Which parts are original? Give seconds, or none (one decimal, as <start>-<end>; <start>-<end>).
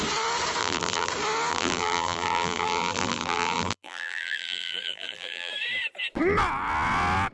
0.0-0.6; 1.1-1.5; 5.5-7.3